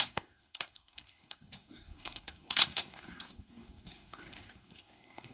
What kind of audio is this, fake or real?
fake